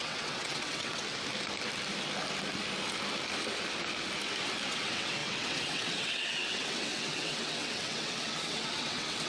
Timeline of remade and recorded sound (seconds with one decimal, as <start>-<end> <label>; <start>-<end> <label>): 0.0-1.0 remade; 1.0-4.7 recorded; 4.7-9.3 remade